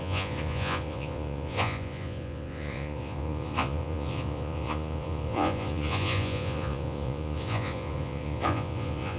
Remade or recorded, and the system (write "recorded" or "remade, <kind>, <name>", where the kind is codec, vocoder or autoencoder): remade, vocoder, Vocos